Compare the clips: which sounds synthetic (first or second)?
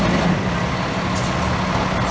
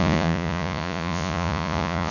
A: second